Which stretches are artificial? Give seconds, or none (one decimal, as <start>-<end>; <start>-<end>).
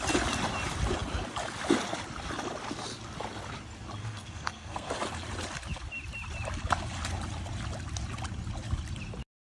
4.0-4.9